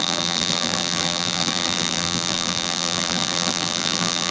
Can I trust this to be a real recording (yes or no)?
no